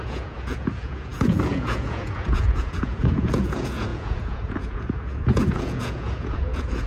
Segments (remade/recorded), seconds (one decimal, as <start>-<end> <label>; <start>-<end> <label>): 0.0-6.9 remade

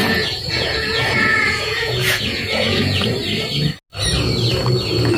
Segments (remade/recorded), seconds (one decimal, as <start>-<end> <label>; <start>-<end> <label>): 0.0-3.1 remade; 3.1-5.2 recorded